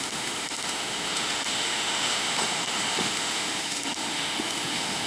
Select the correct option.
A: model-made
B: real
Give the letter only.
A